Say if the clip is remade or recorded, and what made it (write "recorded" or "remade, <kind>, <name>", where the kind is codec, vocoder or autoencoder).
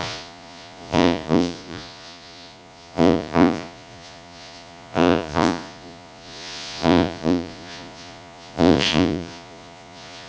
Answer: remade, vocoder, Vocos